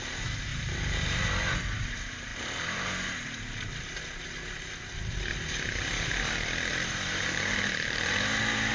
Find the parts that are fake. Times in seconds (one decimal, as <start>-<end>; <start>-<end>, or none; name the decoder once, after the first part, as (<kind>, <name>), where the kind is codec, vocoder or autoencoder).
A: 0.5-1.2 (vocoder, BigVGAN v2); 2.3-3.1; 6.7-8.7